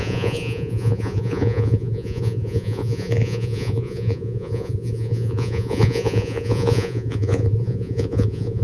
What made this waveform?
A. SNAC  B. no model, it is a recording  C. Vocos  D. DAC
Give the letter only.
C